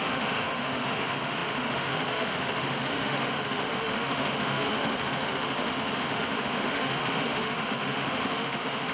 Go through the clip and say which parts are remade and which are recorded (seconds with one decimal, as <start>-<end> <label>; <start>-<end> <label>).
0.0-8.9 remade